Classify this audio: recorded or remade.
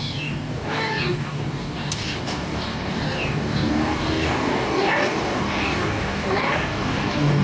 remade